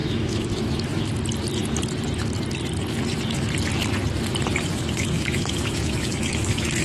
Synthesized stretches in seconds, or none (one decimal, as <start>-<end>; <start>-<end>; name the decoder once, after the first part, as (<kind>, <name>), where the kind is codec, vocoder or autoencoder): 0.0-1.1 (autoencoder, DAC-VAE); 4.7-6.8